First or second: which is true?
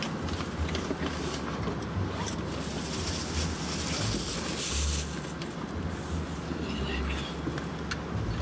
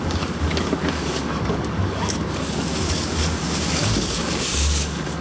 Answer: first